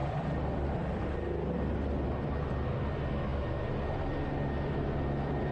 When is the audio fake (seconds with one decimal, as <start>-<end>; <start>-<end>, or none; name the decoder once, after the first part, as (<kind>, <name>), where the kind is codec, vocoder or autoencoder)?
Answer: 0.0-0.9 (vocoder, BigVGAN v2)